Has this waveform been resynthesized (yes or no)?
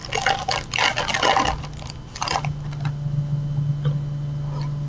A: no